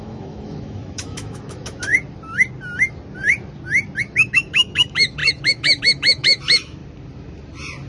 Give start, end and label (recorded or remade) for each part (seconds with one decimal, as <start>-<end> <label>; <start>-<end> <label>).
0.0-1.9 remade; 1.9-4.0 recorded; 4.0-6.8 remade; 6.8-7.9 recorded

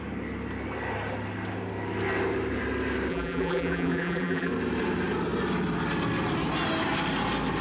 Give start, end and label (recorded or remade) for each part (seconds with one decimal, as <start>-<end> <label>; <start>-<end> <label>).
0.0-3.1 recorded; 3.1-4.5 remade; 4.5-7.6 recorded

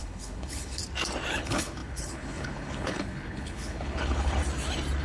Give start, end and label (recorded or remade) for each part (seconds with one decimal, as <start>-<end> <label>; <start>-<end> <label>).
0.0-0.8 remade; 0.8-1.3 recorded; 1.3-4.4 remade; 4.4-5.0 recorded

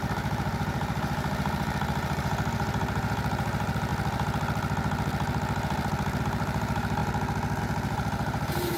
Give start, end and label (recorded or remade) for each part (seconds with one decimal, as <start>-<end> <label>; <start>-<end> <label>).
0.0-3.9 remade; 3.9-6.2 recorded; 6.2-7.0 remade; 7.0-7.6 recorded; 7.6-8.8 remade

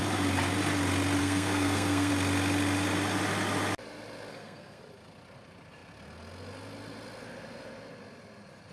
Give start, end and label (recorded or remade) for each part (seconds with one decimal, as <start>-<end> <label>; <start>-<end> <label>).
0.0-1.2 recorded; 1.2-2.1 remade; 2.1-4.3 recorded; 4.3-4.8 remade; 4.8-8.7 recorded